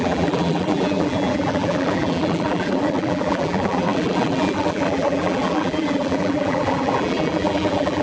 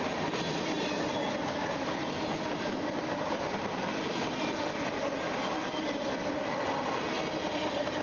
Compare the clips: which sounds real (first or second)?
second